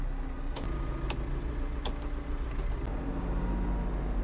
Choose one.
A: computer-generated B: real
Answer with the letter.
B